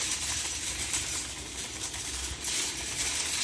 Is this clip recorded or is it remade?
recorded